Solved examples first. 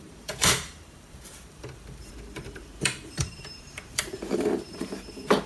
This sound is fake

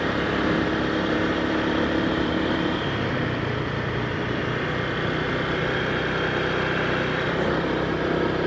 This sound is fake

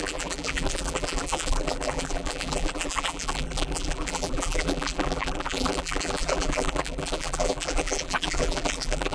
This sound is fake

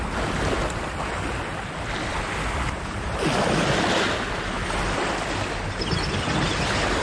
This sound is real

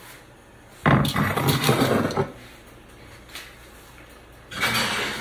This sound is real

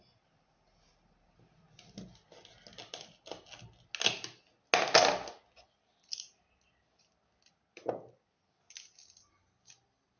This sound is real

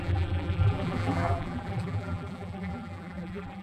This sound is fake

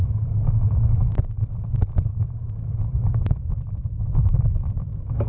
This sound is real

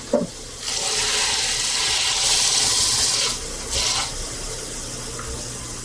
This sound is real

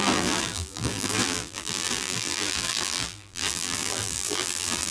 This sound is fake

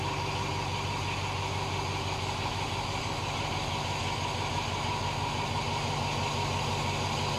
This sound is real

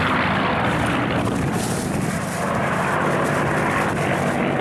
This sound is fake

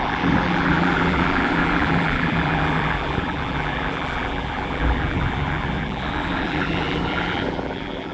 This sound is fake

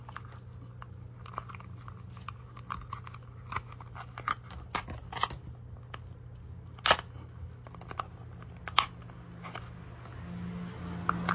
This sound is real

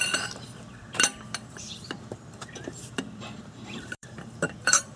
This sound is fake